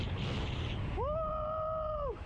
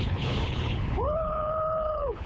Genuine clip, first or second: first